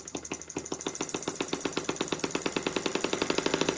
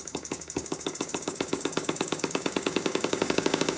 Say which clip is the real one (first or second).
first